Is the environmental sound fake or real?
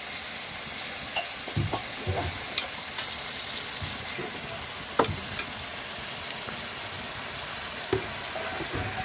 real